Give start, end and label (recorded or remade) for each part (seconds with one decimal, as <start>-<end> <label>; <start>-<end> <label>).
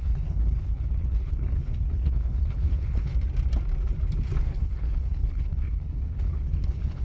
0.0-3.1 remade; 3.1-4.4 recorded; 4.4-7.0 remade